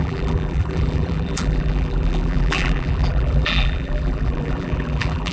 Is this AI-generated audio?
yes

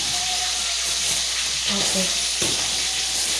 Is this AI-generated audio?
no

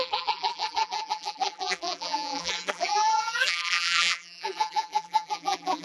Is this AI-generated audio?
yes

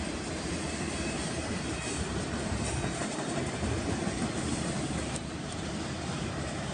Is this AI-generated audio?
yes